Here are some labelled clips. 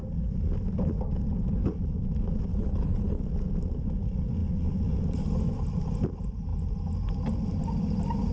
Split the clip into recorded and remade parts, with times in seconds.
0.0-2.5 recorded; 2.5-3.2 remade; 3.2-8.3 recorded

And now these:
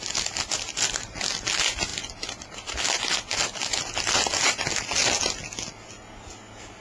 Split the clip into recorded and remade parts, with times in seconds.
0.0-6.8 recorded

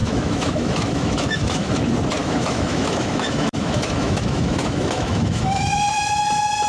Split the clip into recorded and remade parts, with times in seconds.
0.0-1.7 remade; 1.7-2.2 recorded; 2.2-5.6 remade; 5.6-6.7 recorded

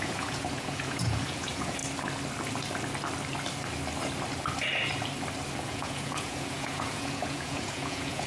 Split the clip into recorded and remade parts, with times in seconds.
0.0-1.8 remade; 1.8-5.6 recorded; 5.6-8.3 remade

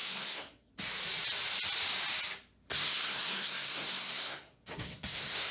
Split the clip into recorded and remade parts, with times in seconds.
0.0-0.7 remade; 0.7-2.7 recorded; 2.7-5.5 remade